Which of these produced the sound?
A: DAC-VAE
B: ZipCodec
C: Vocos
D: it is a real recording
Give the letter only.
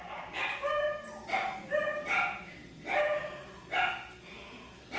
D